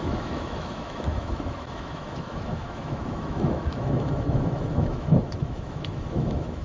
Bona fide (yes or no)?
no